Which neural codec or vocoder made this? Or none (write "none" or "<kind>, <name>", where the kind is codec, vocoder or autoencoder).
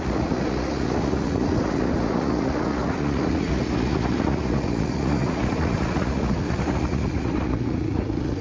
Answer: vocoder, Vocos